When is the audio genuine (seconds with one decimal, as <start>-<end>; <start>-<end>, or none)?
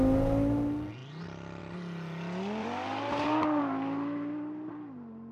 0.0-2.6; 3.6-5.3